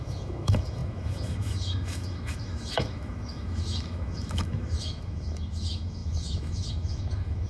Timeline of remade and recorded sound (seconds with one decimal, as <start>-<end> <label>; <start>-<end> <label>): 0.0-7.5 remade